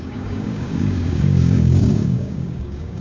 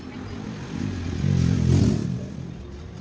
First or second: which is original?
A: second